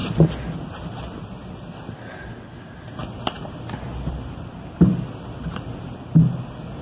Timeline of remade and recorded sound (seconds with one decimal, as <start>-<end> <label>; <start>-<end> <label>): 0.0-1.2 remade; 1.2-3.0 recorded; 3.0-5.8 remade; 5.8-6.8 recorded